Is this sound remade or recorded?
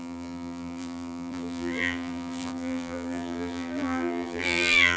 remade